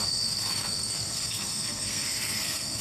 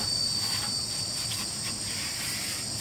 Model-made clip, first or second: first